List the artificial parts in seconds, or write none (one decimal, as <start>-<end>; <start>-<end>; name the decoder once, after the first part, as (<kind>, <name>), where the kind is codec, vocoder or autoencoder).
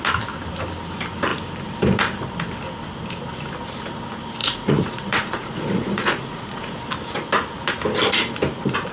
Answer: 4.4-6.8 (vocoder, Vocos)